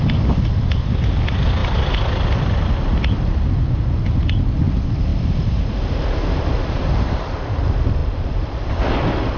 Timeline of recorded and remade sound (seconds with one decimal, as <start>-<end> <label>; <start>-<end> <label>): 0.0-9.4 recorded